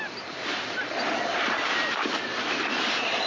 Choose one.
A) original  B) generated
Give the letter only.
A